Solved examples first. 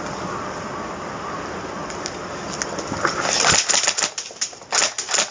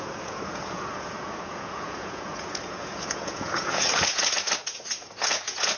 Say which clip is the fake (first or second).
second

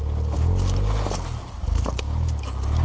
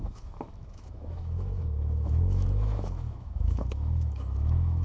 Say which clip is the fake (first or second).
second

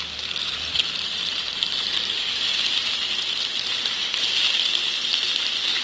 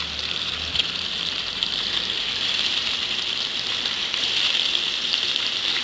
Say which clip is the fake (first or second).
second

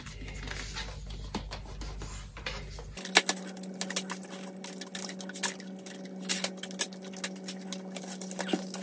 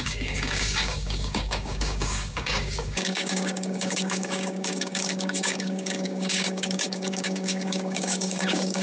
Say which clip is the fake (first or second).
second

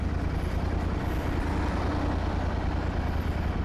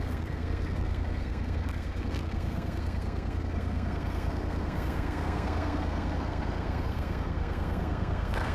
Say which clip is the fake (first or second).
second